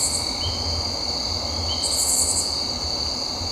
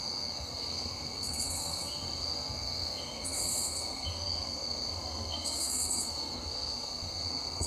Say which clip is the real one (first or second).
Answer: first